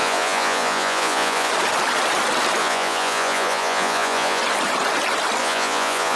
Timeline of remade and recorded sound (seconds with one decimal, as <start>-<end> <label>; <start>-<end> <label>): 0.0-1.5 remade; 1.5-2.6 recorded; 2.6-4.4 remade; 4.4-5.4 recorded; 5.4-6.2 remade